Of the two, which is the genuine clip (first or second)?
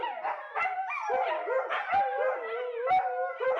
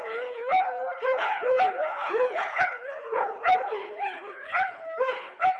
first